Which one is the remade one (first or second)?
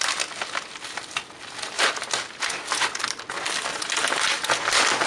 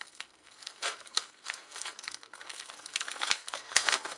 second